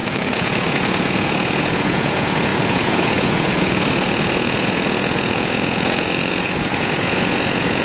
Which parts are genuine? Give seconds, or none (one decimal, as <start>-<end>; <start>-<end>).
none